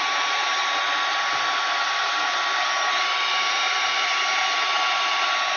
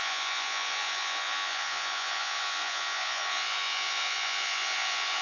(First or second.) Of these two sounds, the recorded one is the first